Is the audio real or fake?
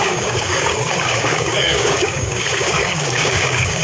fake